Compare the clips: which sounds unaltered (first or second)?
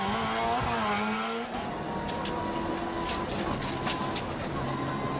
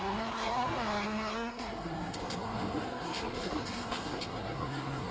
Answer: first